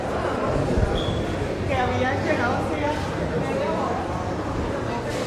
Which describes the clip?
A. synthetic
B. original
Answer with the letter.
B